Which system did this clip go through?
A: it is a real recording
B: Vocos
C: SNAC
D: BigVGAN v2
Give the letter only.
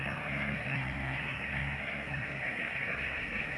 C